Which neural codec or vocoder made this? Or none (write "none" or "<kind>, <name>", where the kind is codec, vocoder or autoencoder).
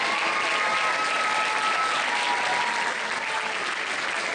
none